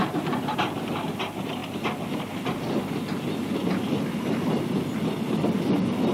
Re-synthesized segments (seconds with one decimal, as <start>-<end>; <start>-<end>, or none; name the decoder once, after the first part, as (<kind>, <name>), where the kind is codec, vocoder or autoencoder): none

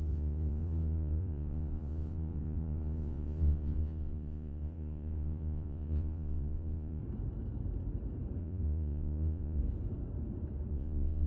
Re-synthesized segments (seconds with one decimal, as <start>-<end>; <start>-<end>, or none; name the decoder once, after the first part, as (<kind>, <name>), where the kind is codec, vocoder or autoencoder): 0.0-7.0 (vocoder, Vocos); 8.4-9.6; 10.7-11.3